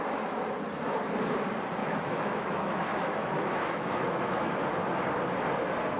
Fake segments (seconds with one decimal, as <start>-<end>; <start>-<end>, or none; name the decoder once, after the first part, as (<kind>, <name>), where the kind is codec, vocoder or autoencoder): 1.8-4.6 (autoencoder, DAC-VAE)

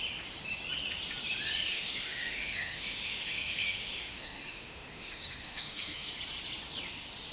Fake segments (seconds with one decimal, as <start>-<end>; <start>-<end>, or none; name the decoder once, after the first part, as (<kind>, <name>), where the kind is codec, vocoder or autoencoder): 1.7-6.1 (autoencoder, DAC-VAE)

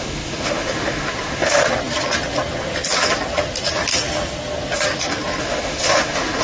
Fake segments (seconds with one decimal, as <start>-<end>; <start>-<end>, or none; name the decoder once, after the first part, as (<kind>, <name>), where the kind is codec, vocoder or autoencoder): 0.0-1.6 (autoencoder, DAC-VAE); 5.4-6.4

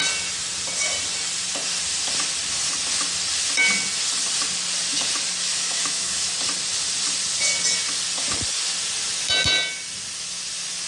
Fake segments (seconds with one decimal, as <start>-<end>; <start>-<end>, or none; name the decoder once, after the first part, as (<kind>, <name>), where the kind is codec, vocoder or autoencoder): 5.5-6.3 (autoencoder, DAC-VAE)

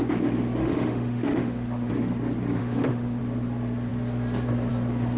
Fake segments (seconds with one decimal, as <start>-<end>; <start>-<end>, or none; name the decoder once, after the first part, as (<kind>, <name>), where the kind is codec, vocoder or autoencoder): 0.6-1.9 (autoencoder, DAC-VAE); 2.6-3.2

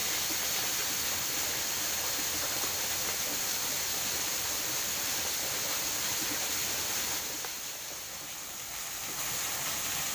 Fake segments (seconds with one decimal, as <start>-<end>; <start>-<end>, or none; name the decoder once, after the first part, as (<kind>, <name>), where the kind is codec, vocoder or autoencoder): none